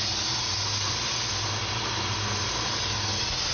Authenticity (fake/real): real